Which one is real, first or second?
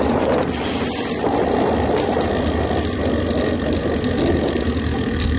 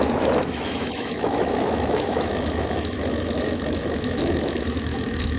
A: first